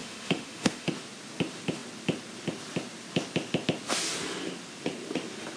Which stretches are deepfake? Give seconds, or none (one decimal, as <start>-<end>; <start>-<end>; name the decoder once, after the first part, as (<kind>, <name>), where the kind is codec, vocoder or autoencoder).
0.0-0.9 (autoencoder, DAC-VAE)